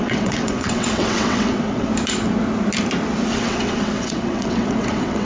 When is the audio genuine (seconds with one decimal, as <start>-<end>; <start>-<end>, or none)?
1.9-3.3